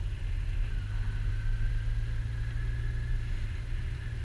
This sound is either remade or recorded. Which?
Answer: recorded